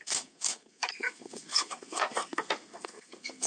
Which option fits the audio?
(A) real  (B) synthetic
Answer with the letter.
B